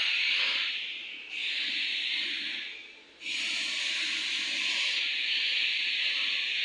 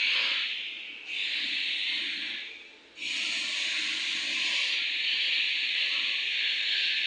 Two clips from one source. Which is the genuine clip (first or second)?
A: second